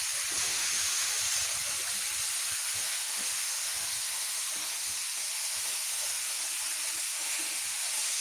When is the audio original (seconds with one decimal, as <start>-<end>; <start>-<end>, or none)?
0.0-0.5; 1.1-2.4; 6.4-7.1